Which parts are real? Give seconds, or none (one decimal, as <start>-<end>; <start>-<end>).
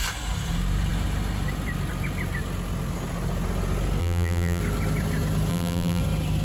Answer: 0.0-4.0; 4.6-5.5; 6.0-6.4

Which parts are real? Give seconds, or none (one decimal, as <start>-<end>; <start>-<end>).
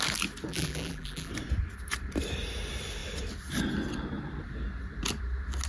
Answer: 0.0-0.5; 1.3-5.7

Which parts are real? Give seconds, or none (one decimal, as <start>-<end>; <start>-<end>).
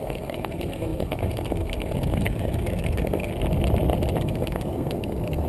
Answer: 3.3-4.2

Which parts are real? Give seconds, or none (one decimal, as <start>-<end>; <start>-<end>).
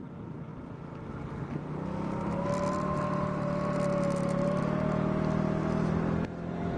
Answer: 0.0-6.8